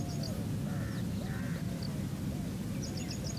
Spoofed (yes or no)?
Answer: no